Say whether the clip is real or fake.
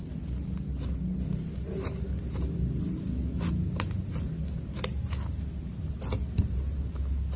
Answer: real